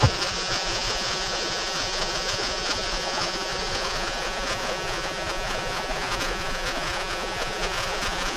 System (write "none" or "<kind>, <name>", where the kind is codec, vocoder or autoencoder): vocoder, Vocos